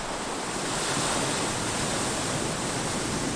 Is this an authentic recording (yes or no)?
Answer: yes